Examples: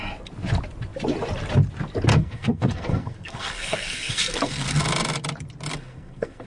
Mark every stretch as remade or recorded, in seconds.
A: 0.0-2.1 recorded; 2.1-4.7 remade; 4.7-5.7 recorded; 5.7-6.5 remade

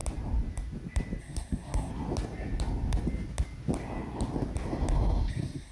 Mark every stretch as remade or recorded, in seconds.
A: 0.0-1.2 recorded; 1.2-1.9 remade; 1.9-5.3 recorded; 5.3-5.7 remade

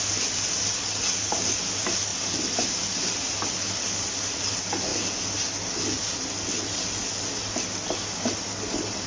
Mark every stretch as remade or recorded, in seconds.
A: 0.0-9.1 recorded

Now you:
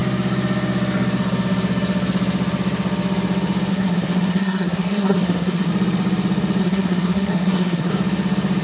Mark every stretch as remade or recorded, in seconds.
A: 0.0-3.7 recorded; 3.7-5.7 remade; 5.7-6.6 recorded; 6.6-7.9 remade; 7.9-8.6 recorded

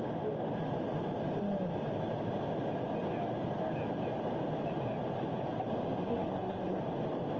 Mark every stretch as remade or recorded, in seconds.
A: 0.0-6.0 recorded; 6.0-6.8 remade; 6.8-7.4 recorded

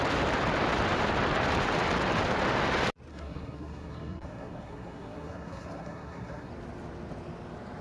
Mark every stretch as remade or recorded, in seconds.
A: 0.0-3.1 recorded; 3.1-6.5 remade; 6.5-7.8 recorded

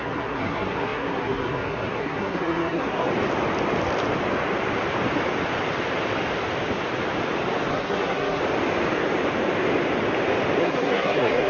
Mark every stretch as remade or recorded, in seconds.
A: 0.0-3.1 remade; 3.1-7.7 recorded; 7.7-8.4 remade; 8.4-10.6 recorded; 10.6-11.5 remade

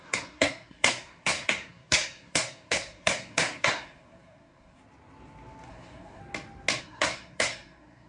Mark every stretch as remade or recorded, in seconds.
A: 0.0-4.8 remade; 4.8-5.7 recorded; 5.7-6.2 remade; 6.2-6.8 recorded; 6.8-8.1 remade